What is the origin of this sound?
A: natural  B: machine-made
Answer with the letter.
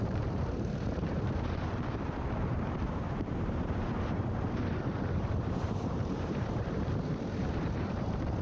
B